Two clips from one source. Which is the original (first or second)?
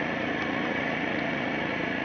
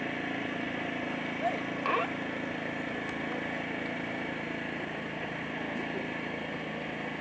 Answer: second